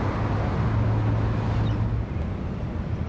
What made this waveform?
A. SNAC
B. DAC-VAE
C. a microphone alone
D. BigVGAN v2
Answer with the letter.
C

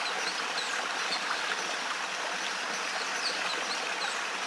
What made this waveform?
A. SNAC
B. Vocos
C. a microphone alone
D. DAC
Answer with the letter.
C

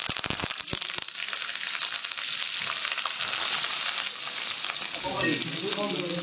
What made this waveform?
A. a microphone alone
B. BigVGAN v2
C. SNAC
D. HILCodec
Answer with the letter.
A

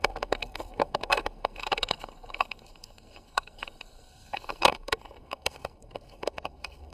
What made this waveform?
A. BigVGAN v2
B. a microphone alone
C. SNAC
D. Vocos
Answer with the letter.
C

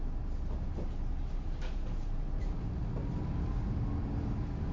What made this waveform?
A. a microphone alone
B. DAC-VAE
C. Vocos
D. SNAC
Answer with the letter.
A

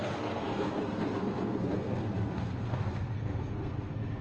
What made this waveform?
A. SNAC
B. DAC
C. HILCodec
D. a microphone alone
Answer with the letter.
A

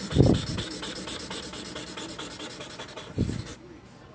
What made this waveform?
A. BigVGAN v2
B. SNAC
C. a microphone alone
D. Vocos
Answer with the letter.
C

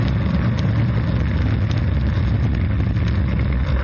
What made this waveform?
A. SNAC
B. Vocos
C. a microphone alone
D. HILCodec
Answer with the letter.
C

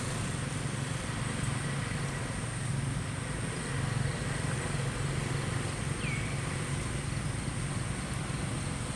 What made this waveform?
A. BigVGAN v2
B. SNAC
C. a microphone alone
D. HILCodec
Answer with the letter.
C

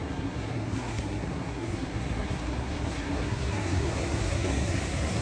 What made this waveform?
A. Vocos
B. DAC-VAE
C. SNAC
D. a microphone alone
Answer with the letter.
C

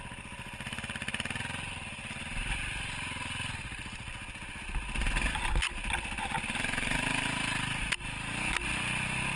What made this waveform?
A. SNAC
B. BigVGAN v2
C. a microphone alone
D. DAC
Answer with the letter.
C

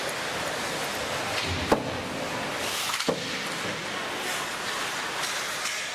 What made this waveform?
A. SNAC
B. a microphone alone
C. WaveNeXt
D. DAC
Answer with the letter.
B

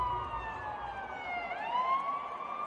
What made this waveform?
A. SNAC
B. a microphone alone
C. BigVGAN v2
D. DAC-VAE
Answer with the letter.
B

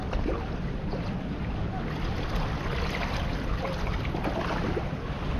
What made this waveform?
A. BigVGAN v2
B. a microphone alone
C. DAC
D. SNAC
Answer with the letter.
B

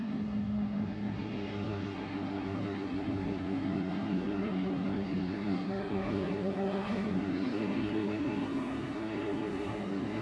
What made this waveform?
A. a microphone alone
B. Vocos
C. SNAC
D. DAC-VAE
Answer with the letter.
C